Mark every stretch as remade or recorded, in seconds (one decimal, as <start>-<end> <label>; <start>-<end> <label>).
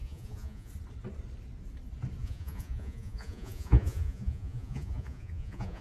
0.0-0.7 remade; 0.7-2.2 recorded; 2.2-5.8 remade